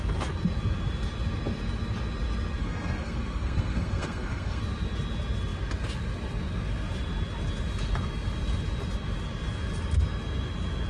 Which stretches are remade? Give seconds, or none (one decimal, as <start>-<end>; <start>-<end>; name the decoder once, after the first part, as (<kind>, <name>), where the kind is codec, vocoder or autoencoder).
2.6-4.6 (codec, SNAC)